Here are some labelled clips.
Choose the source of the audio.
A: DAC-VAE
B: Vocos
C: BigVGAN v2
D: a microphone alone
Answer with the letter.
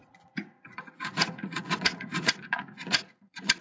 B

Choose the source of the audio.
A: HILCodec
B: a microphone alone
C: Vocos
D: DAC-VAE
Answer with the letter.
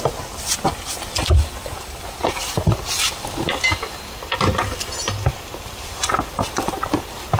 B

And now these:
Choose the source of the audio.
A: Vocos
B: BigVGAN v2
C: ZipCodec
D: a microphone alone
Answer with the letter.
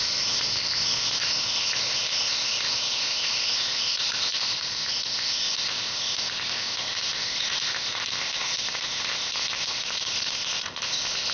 C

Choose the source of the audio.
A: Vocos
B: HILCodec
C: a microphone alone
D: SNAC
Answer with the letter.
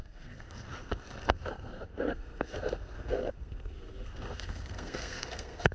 D